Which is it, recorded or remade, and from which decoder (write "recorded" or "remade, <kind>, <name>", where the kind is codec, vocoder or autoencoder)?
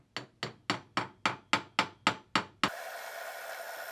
recorded